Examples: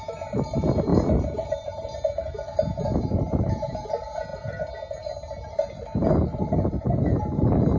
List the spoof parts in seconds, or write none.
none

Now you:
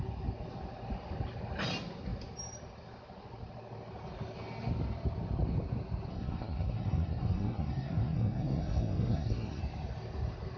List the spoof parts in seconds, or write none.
6.1-9.6 (codec, SNAC)